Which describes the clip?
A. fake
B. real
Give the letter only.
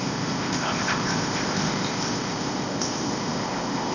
A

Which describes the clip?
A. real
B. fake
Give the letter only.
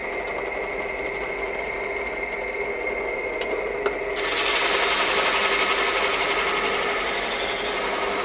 A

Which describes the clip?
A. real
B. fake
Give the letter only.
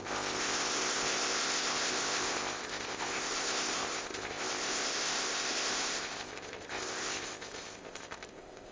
B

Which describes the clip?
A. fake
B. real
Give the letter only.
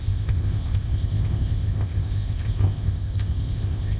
A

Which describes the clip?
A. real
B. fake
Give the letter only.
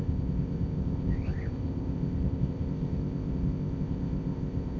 B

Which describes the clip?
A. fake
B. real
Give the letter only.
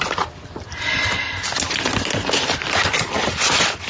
B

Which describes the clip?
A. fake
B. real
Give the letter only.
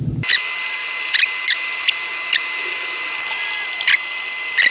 B